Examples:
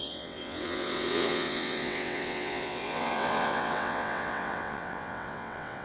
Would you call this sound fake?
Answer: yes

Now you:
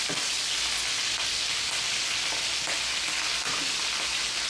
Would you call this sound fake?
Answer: no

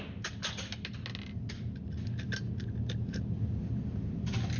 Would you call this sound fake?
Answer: no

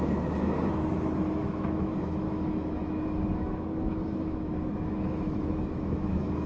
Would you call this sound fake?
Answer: yes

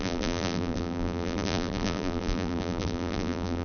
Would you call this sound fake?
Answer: yes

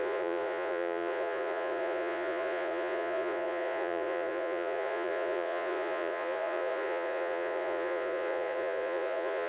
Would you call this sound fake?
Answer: yes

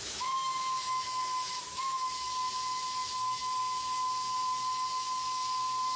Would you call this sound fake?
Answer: yes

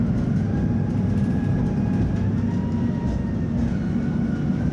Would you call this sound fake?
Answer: no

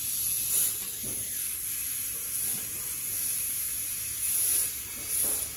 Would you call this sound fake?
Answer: no